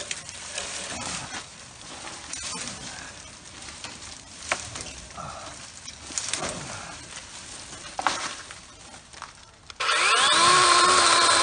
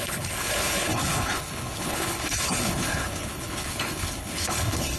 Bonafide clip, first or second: first